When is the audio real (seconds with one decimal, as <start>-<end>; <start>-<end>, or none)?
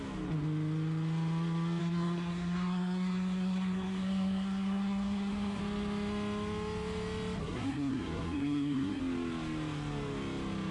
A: 0.0-1.8; 5.6-7.4; 9.0-10.7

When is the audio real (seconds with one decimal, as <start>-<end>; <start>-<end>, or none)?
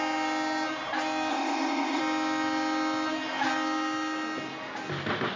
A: 0.0-1.3; 2.0-5.4